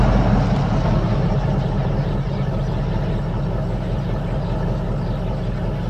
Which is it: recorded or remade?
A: recorded